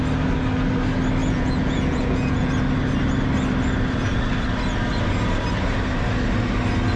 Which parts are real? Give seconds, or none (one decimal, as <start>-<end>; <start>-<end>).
0.0-1.2; 2.5-7.0